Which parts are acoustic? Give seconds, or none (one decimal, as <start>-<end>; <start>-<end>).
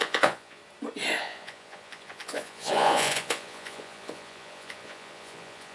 0.6-1.2